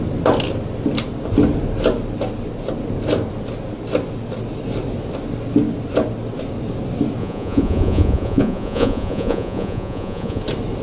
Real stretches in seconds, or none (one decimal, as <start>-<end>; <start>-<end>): 0.0-7.2; 10.4-10.8